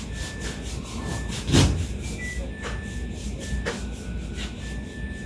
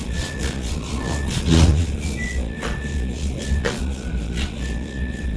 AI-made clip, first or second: second